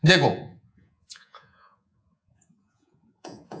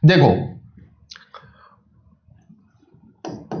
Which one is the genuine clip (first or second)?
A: second